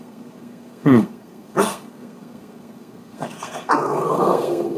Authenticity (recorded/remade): remade